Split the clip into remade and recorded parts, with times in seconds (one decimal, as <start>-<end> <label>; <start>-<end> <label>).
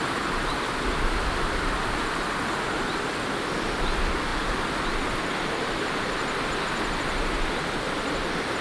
0.0-8.6 recorded